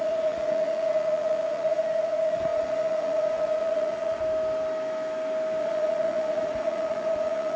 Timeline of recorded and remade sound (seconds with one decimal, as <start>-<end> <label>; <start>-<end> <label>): 0.0-4.2 remade; 4.2-5.6 recorded; 5.6-7.6 remade